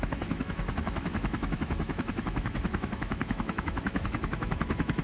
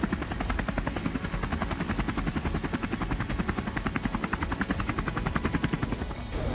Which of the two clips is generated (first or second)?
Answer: first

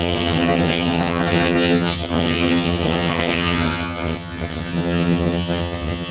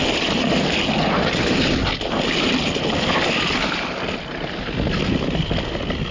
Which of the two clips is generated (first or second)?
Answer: first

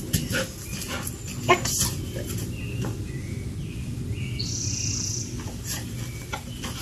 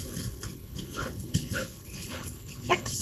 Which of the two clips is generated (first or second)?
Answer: second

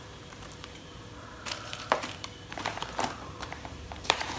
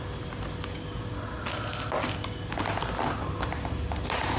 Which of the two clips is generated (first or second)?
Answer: first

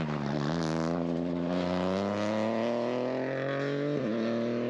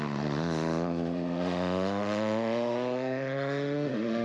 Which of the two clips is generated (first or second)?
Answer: second